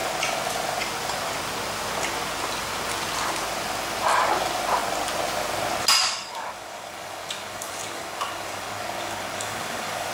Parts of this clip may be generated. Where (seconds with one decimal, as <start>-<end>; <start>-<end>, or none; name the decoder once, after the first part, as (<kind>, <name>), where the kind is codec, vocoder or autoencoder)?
6.0-10.1 (codec, DAC)